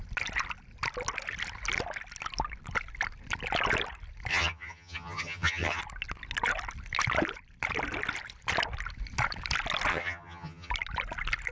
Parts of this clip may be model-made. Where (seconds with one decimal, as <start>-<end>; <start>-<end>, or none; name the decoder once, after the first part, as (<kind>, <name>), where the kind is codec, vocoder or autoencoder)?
4.3-5.8 (vocoder, HiFi-GAN); 9.9-10.7